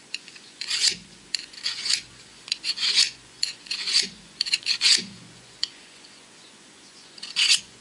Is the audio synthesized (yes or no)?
yes